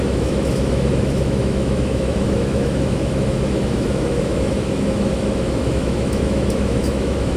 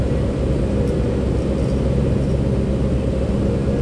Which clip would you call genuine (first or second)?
second